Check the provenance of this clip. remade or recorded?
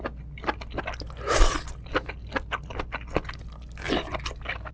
recorded